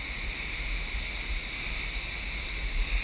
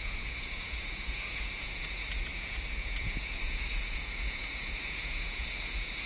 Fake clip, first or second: second